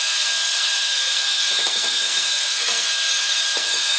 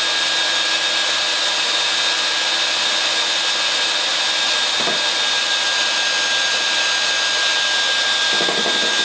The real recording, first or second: second